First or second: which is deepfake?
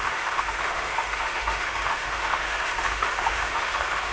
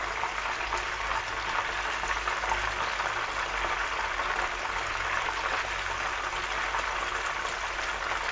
first